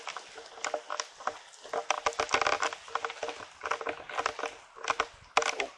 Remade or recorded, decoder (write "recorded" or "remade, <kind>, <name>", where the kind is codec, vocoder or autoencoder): recorded